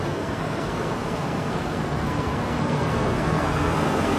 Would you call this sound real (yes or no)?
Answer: no